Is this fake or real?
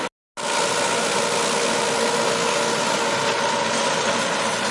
real